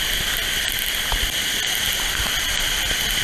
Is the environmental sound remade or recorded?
recorded